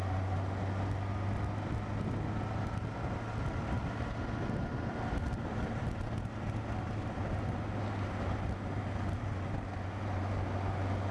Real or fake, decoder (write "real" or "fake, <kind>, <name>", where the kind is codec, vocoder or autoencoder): real